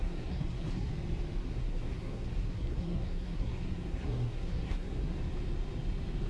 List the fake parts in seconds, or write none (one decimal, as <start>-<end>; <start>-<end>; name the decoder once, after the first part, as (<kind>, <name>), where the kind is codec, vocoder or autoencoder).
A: 0.0-0.9 (codec, SNAC); 1.4-5.2

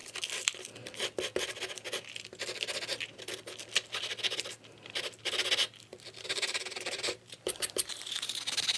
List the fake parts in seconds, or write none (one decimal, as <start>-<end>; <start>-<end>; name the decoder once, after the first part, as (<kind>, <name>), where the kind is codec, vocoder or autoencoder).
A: 5.9-8.0 (vocoder, BigVGAN v2)

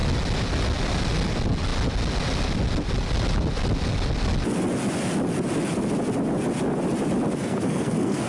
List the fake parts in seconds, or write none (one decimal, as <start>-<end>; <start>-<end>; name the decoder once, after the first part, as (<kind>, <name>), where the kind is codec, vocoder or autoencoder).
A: 7.4-8.3 (codec, SNAC)

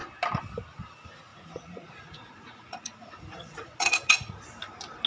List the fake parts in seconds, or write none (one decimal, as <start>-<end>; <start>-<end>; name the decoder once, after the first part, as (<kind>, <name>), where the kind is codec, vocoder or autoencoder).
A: 1.3-4.4 (vocoder, Vocos)

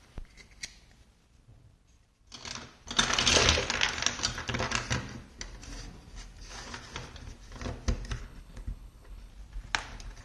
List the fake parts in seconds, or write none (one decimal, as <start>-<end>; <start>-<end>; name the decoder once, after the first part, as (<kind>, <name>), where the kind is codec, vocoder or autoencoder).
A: 8.2-9.3 (codec, HILCodec)